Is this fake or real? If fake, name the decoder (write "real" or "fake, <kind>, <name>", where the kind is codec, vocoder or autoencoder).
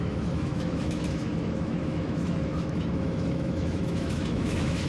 fake, autoencoder, DAC-VAE